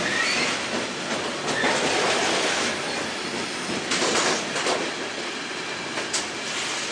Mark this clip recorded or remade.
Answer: recorded